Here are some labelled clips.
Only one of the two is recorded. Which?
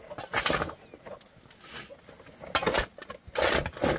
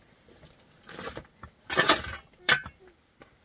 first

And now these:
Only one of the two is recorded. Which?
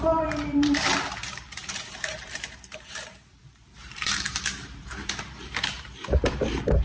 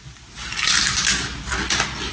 second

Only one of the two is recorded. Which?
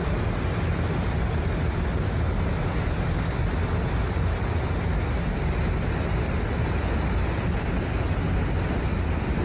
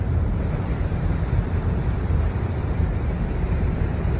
first